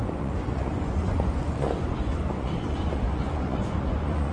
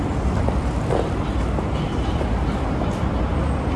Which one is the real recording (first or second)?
second